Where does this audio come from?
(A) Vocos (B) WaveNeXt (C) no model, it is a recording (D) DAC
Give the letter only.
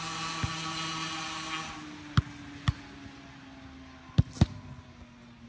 C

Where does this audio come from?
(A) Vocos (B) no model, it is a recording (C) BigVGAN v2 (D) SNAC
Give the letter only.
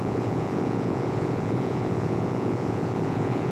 A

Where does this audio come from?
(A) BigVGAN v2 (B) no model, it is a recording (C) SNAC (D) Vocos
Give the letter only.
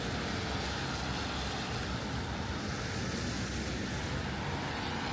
B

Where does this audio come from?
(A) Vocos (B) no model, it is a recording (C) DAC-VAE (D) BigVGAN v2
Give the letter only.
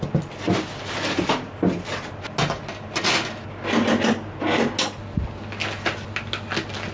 B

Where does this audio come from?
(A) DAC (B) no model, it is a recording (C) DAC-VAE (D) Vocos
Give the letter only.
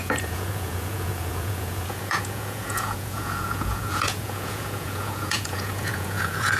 D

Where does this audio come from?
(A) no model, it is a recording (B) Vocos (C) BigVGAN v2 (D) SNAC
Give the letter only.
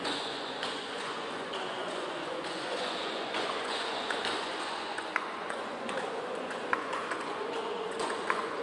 B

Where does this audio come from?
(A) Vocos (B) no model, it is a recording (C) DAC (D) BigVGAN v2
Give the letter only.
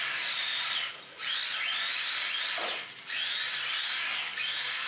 B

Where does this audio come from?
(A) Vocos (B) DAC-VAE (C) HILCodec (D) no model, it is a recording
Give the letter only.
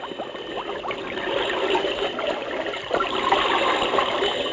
D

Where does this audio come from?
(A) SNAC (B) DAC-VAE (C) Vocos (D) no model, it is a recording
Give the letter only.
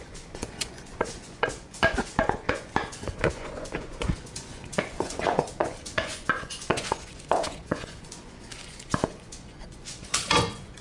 C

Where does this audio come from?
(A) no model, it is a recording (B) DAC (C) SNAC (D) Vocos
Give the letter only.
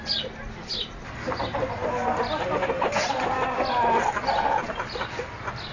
A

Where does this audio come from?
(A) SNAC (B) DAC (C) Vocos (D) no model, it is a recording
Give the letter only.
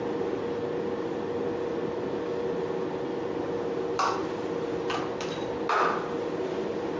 D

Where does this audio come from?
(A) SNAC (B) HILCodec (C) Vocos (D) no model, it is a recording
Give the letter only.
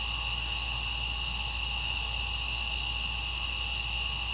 D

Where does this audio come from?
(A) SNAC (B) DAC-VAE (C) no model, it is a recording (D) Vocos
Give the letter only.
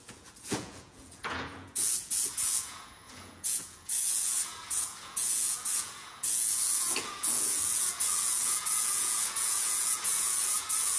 D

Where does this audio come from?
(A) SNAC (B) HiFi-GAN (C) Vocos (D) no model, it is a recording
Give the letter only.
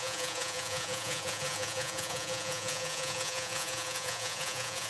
C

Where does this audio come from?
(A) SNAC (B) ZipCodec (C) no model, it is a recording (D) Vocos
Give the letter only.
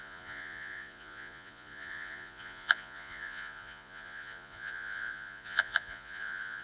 D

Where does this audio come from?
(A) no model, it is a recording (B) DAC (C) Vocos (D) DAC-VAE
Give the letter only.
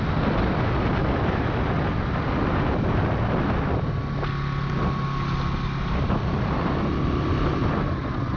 A